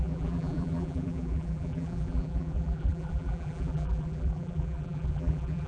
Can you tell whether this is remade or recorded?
remade